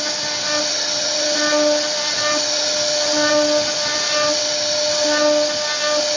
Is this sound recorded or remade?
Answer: recorded